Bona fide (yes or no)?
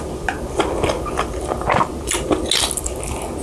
yes